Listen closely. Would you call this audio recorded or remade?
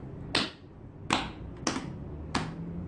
recorded